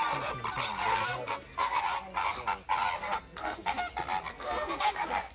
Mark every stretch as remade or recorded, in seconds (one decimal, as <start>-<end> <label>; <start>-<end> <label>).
0.0-0.9 recorded; 0.9-1.8 remade; 1.8-3.0 recorded; 3.0-3.9 remade; 3.9-4.3 recorded; 4.3-5.3 remade